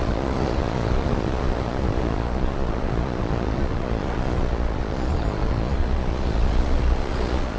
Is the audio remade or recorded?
remade